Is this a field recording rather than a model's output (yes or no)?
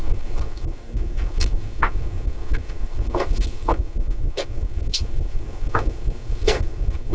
no